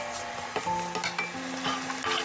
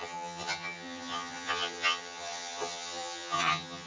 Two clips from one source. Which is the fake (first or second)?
second